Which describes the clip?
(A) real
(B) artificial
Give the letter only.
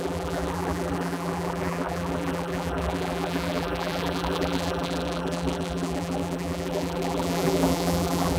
B